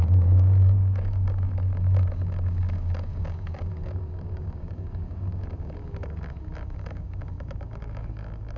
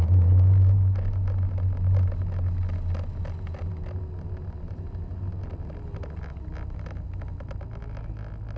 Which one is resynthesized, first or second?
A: first